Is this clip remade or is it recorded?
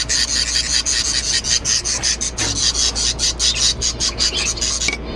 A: recorded